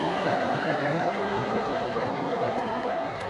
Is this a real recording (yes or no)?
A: no